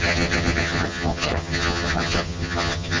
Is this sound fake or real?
fake